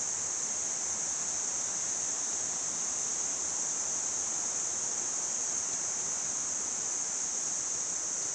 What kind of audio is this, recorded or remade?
recorded